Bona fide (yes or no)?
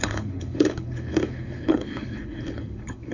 no